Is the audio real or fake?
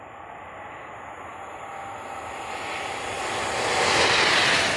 real